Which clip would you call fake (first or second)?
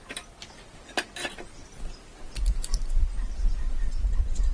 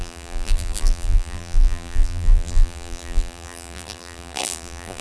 second